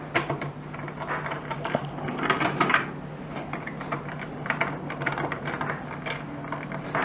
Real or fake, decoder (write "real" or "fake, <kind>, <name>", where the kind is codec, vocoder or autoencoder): real